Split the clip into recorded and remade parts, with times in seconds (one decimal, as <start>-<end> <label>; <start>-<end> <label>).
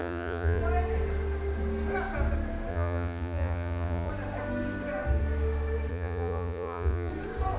0.0-0.6 remade; 0.6-2.7 recorded; 2.7-4.1 remade; 4.1-5.9 recorded; 5.9-7.1 remade; 7.1-7.6 recorded